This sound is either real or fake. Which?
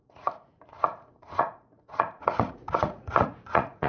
fake